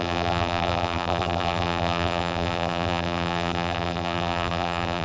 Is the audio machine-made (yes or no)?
yes